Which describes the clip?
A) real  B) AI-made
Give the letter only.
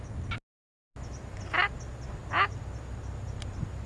A